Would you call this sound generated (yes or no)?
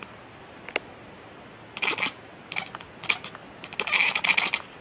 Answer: no